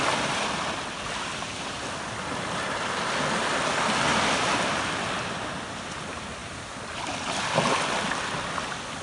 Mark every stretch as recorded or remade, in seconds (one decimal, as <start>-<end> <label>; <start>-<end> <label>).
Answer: 0.0-9.0 recorded